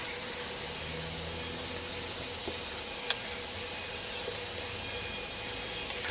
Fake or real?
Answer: real